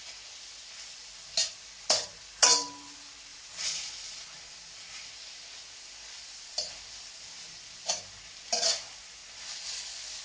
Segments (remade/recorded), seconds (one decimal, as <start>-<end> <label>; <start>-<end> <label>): 0.0-3.3 recorded; 3.3-7.9 remade; 7.9-9.2 recorded; 9.2-10.2 remade